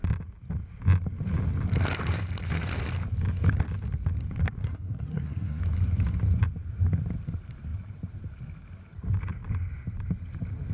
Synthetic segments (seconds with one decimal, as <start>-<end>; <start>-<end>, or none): 4.6-5.6